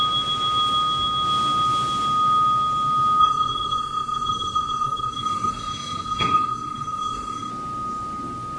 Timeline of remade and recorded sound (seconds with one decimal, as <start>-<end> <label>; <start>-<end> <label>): 0.0-3.2 recorded; 3.2-7.5 remade; 7.5-8.6 recorded